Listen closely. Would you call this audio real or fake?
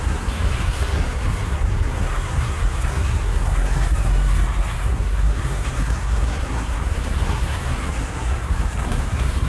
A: fake